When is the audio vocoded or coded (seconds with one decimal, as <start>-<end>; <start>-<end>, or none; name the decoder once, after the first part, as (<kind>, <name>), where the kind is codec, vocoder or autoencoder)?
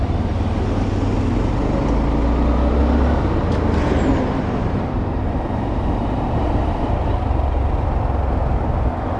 2.8-7.0 (vocoder, BigVGAN v2)